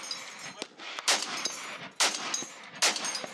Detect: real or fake real